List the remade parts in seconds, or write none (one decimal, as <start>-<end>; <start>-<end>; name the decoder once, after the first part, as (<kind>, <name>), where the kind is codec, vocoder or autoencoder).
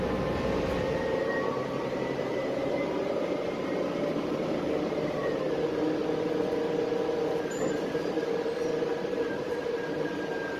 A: 0.0-6.0 (vocoder, BigVGAN v2); 9.2-10.6